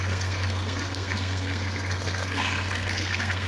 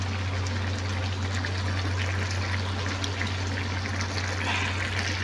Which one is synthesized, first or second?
first